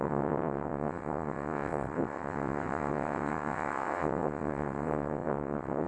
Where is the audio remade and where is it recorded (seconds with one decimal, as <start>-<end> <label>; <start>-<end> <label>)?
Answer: 0.0-5.9 remade